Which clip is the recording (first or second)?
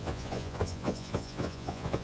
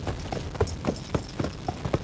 second